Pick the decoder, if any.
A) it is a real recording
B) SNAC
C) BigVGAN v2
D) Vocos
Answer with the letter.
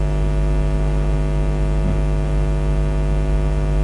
A